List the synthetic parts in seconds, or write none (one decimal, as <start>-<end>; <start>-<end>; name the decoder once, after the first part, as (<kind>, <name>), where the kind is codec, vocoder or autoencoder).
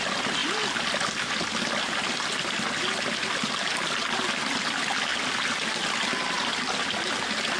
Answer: none